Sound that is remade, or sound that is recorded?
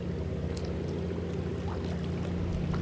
recorded